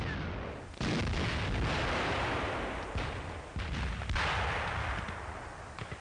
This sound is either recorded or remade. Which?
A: recorded